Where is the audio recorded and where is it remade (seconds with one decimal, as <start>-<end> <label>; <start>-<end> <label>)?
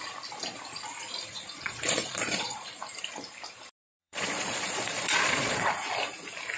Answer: 0.0-1.3 recorded; 1.3-2.7 remade; 2.7-4.0 recorded; 4.0-5.6 remade; 5.6-6.6 recorded